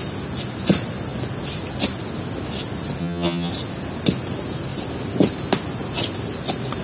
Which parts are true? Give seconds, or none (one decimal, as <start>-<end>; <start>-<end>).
0.0-3.0; 3.5-6.8